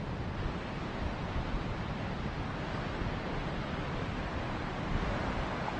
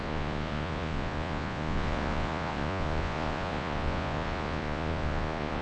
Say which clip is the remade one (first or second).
second